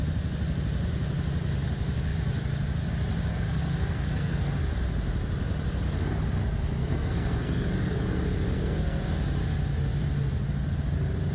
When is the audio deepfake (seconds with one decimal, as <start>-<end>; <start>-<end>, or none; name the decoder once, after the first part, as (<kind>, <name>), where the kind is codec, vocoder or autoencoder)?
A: 3.3-4.5 (codec, SNAC); 6.8-9.0